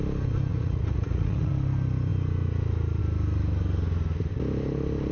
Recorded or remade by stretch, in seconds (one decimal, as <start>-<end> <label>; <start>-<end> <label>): 0.0-0.5 recorded; 0.5-1.5 remade; 1.5-5.1 recorded